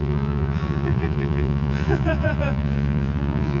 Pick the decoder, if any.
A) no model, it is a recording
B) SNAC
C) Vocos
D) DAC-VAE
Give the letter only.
C